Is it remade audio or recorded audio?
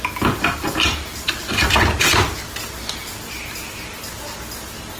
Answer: recorded